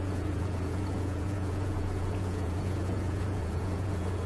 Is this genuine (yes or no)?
no